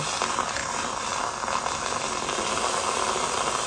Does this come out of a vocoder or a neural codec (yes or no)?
no